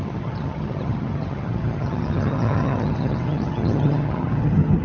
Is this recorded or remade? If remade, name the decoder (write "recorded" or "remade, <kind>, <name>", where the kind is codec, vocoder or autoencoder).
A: remade, vocoder, HiFi-GAN